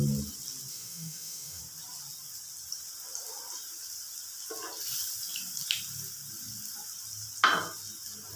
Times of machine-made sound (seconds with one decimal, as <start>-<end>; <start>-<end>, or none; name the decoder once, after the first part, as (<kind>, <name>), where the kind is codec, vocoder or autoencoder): 0.7-1.6 (autoencoder, DAC-VAE)